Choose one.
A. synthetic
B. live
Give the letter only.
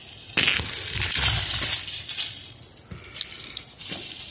B